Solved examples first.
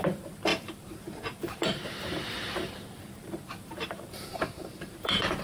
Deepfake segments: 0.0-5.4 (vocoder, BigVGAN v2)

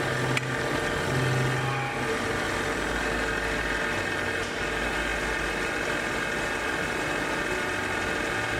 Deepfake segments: none

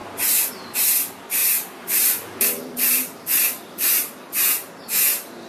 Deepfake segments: 0.0-0.5 (vocoder, BigVGAN v2); 1.4-4.7

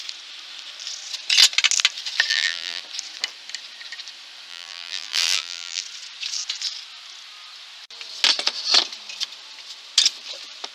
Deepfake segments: 2.3-2.8 (vocoder, BigVGAN v2); 4.5-5.8

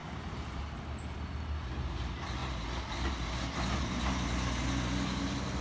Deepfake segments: 0.0-0.6 (vocoder, BigVGAN v2)